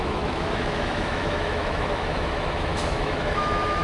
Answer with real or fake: fake